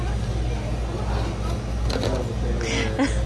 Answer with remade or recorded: recorded